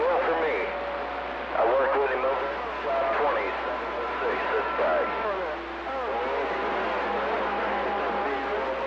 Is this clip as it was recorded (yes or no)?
yes